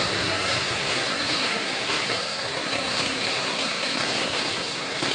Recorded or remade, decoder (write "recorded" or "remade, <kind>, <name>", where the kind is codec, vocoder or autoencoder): remade, codec, SNAC